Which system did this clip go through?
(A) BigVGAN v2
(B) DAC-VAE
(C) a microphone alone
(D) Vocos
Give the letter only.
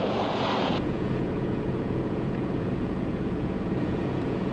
D